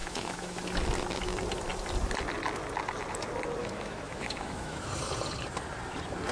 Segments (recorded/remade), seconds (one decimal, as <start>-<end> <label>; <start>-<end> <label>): 0.0-0.6 remade; 0.6-3.6 recorded; 3.6-4.9 remade; 4.9-6.3 recorded